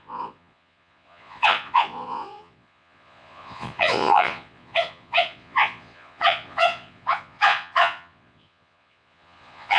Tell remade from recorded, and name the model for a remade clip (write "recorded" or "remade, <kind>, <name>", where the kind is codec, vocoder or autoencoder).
remade, vocoder, Vocos